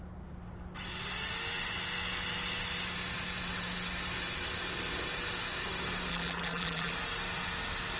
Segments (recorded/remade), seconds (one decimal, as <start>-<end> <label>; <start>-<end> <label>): 0.0-6.1 recorded; 6.1-6.9 remade; 6.9-8.0 recorded